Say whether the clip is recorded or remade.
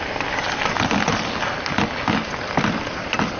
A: recorded